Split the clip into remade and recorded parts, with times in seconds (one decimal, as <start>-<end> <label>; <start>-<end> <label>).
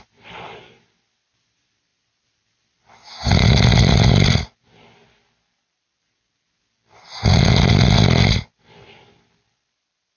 0.0-10.2 recorded